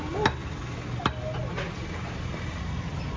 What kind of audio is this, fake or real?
real